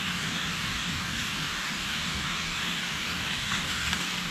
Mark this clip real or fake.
fake